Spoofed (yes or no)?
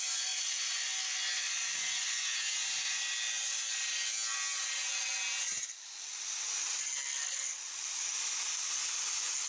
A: no